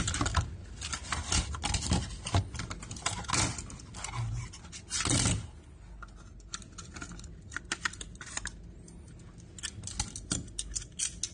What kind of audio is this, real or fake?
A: real